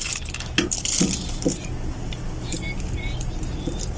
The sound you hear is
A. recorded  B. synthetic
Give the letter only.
A